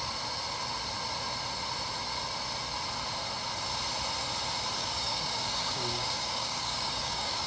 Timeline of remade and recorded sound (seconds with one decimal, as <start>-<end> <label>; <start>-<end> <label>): 0.0-4.8 recorded; 4.8-7.5 remade